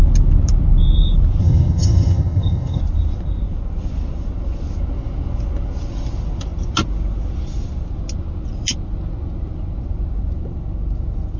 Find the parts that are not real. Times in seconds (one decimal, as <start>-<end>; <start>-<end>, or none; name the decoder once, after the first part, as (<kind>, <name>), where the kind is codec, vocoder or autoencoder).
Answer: 1.4-2.8 (vocoder, HiFi-GAN)